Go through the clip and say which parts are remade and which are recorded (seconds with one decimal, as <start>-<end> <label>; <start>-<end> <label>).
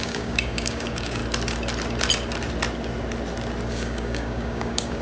0.0-1.2 remade; 1.2-3.7 recorded; 3.7-5.0 remade